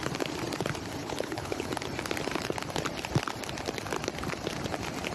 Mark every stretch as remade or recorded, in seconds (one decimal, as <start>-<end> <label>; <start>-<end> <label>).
0.0-1.0 recorded; 1.0-1.7 remade; 1.7-5.1 recorded